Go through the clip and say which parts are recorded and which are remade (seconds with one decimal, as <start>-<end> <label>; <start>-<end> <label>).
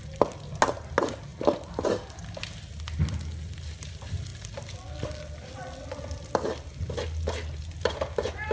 0.0-8.5 recorded